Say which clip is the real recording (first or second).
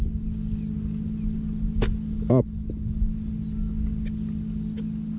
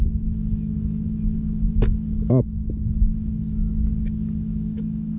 first